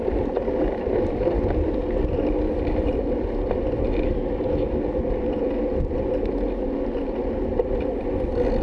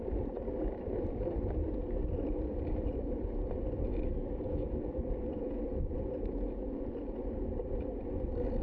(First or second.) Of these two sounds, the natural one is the first